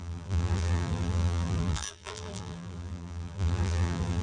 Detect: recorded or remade remade